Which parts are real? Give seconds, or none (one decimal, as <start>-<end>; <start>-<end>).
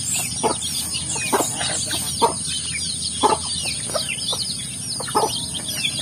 0.0-6.0